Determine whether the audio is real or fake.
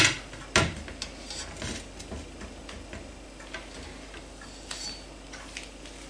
real